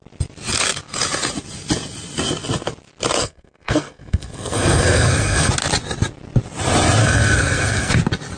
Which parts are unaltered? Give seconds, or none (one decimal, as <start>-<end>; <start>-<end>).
0.0-3.2; 5.5-7.0; 7.9-8.4